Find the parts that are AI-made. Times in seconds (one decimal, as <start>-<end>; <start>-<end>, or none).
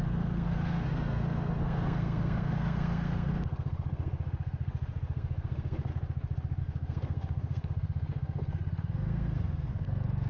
0.0-5.9; 6.6-10.3